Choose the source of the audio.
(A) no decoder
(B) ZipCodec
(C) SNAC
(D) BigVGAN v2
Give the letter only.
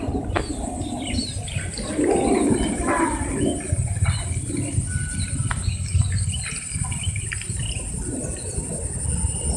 D